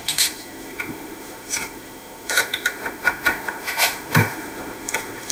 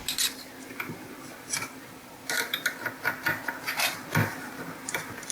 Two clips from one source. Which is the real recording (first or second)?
second